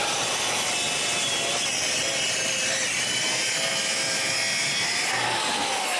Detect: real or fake real